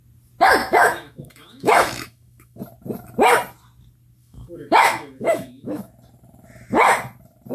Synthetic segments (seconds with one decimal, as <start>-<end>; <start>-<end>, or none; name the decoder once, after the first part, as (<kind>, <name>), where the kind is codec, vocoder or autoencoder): 0.6-2.6 (autoencoder, DAC-VAE); 4.2-5.9